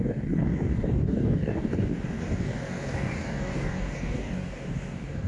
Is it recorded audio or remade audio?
remade